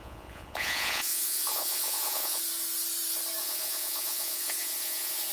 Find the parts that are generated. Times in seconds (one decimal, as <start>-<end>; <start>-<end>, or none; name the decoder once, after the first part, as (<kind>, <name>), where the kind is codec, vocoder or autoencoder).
0.0-2.4 (vocoder, Vocos); 3.4-5.3

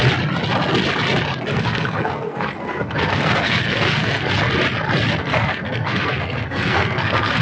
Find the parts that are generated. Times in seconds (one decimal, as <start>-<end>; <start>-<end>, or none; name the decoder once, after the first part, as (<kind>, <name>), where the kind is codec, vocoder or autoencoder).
1.5-4.3 (codec, SNAC); 5.2-7.4

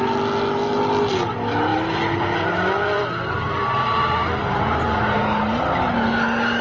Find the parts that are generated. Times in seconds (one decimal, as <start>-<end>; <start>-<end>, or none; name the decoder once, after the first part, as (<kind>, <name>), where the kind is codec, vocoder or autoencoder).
none

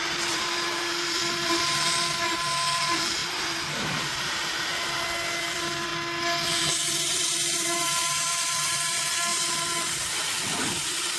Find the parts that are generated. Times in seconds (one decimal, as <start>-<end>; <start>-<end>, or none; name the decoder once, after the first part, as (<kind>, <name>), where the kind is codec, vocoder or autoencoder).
0.0-4.7 (vocoder, BigVGAN v2); 5.4-5.9; 6.5-11.2

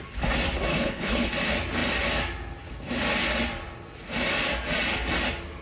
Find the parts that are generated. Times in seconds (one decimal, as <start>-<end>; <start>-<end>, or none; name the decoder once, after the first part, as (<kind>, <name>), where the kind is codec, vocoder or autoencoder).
0.7-1.3 (codec, HILCodec)

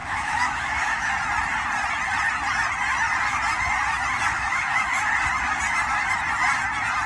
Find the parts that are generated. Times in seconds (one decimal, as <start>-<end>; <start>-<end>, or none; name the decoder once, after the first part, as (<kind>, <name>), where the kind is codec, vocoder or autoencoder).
0.0-1.1 (autoencoder, DAC-VAE); 4.3-5.1